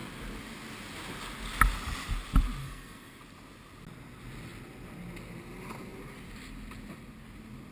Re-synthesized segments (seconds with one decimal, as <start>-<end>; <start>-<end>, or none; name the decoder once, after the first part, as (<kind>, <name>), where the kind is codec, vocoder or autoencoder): 2.6-3.2 (codec, SNAC)